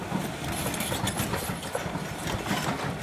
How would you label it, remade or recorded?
recorded